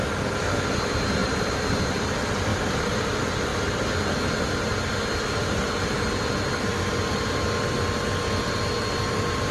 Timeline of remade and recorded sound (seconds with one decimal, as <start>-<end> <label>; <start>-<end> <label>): 0.0-1.2 recorded; 1.2-2.1 remade; 2.1-2.5 recorded; 2.5-3.1 remade; 3.1-9.5 recorded